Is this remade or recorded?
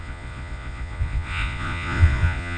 remade